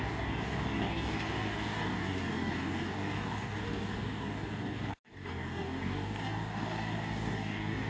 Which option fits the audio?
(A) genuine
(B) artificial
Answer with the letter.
B